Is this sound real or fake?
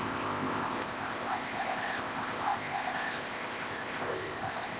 fake